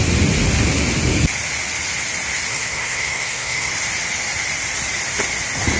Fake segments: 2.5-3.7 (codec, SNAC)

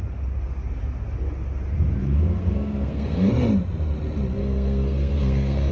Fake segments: 2.0-3.3 (codec, SNAC); 4.4-5.7

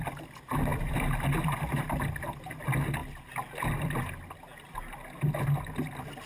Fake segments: none

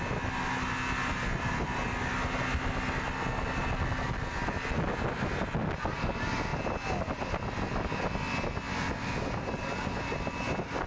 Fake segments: none

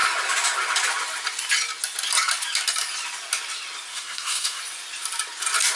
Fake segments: 3.9-4.6 (codec, SNAC)